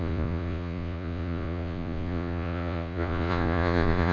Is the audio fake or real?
fake